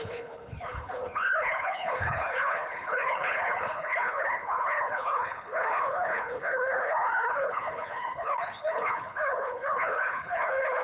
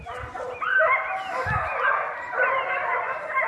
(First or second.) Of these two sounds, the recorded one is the second